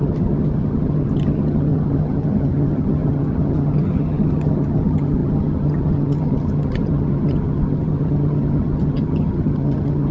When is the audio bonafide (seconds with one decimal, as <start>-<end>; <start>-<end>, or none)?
none